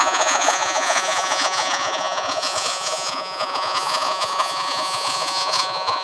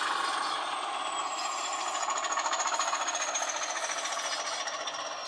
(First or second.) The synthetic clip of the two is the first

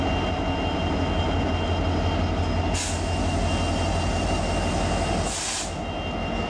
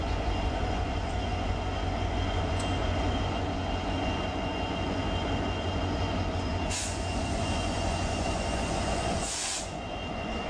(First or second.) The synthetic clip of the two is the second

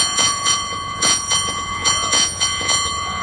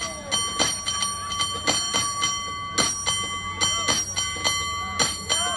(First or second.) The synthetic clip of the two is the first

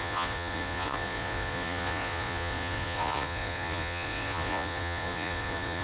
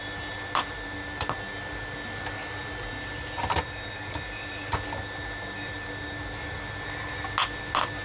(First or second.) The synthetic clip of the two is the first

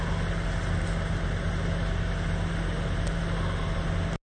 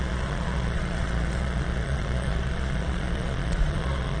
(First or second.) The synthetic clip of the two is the second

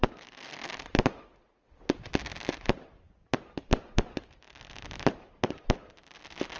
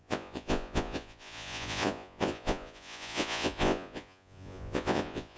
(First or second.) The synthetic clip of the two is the second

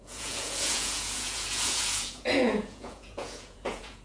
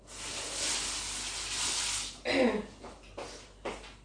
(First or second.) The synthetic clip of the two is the first